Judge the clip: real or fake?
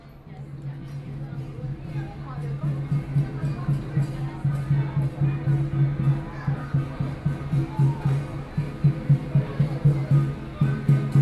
real